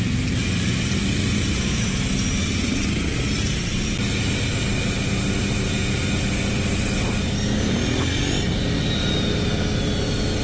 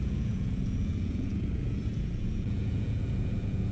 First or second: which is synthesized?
second